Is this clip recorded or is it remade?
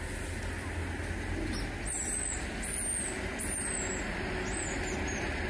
recorded